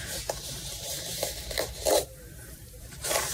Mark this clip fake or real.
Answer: fake